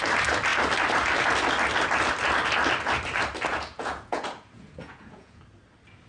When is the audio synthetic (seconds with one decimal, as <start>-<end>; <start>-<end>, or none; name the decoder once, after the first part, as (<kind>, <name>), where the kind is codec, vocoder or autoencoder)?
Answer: 3.5-5.4 (vocoder, Vocos)